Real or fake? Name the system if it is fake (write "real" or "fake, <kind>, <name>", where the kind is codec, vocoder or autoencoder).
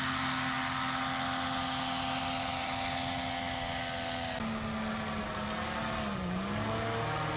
real